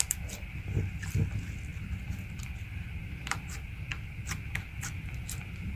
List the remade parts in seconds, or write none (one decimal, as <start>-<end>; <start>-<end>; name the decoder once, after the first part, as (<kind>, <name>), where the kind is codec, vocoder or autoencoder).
none